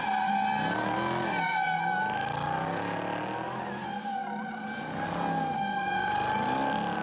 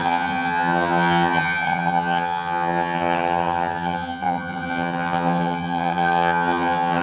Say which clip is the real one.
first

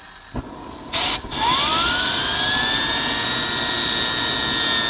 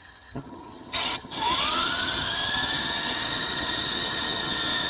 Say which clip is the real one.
first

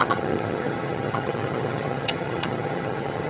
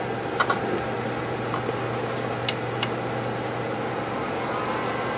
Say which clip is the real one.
second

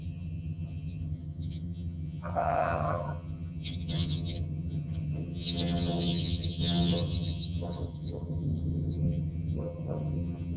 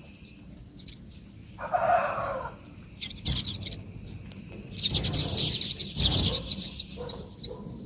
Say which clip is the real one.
second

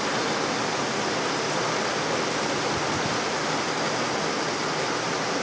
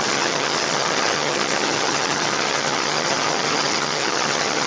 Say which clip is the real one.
first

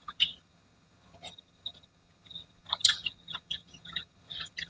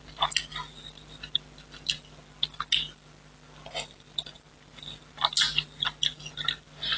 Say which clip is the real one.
second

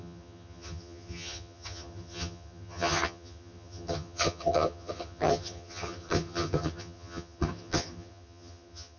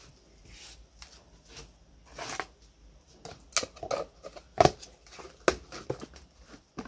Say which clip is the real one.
second